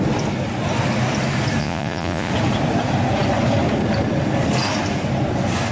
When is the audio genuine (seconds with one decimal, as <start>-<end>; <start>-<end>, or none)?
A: 0.0-1.6; 2.3-5.7